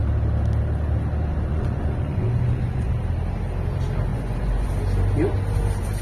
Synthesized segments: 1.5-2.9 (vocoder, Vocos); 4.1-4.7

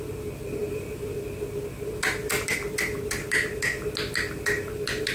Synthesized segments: none